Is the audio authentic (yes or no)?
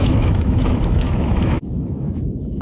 no